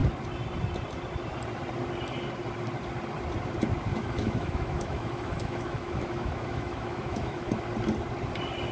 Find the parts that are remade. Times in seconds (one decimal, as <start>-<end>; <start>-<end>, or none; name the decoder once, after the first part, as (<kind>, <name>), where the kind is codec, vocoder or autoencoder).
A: 3.9-7.5 (autoencoder, DAC-VAE)